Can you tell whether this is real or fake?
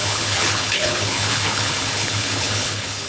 fake